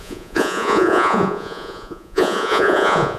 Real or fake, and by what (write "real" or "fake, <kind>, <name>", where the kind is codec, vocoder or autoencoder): fake, vocoder, Vocos